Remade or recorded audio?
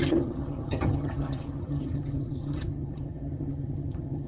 remade